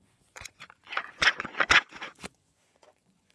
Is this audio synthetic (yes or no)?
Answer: yes